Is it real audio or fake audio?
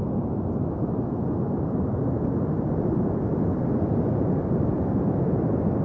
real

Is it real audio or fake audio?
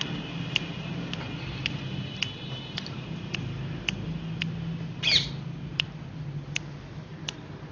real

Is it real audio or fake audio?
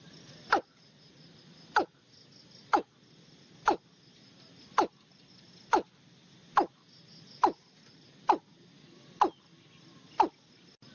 real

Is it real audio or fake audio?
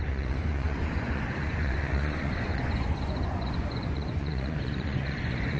fake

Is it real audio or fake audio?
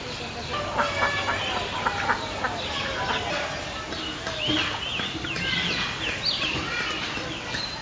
real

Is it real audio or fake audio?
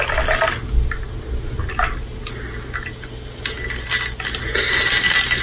real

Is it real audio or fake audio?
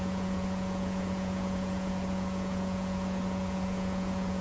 fake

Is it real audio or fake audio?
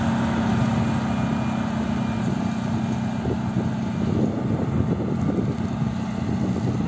real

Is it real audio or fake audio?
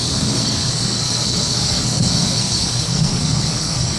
fake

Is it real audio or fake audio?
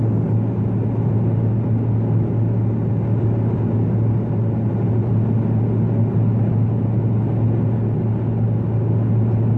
real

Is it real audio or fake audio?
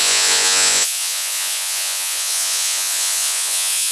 fake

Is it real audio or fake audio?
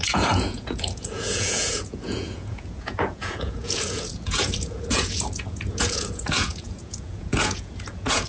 fake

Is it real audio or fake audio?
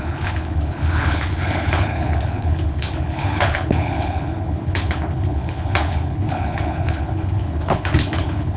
fake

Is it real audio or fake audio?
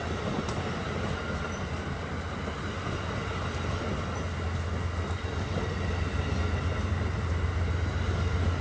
real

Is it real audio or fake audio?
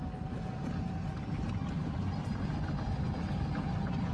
real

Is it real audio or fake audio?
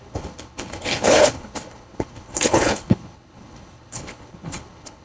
fake